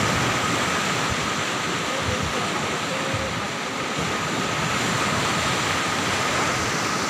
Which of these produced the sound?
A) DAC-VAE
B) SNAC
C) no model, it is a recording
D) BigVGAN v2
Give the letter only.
C